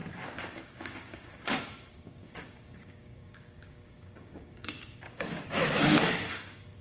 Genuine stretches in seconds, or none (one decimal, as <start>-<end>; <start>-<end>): none